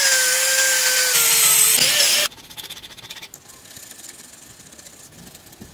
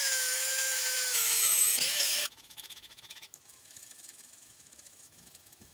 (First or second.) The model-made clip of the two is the second